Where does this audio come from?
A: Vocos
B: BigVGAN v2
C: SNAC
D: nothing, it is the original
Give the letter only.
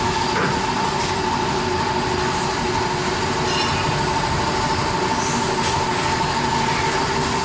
D